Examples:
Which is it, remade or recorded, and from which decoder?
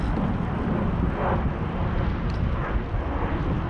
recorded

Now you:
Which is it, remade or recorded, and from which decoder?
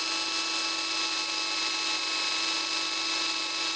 recorded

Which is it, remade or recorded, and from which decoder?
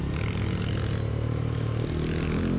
recorded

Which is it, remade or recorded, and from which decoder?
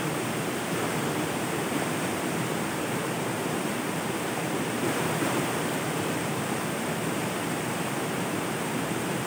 remade, vocoder, BigVGAN v2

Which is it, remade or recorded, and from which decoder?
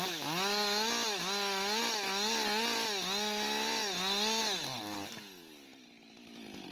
recorded